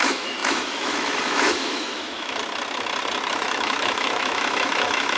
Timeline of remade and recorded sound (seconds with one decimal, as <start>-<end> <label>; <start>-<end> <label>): 0.0-2.4 remade; 2.4-3.3 recorded; 3.3-5.2 remade